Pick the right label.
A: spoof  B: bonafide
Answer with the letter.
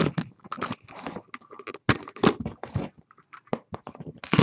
B